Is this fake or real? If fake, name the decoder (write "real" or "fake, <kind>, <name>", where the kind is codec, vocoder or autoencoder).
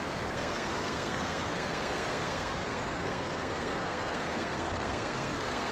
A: fake, codec, SNAC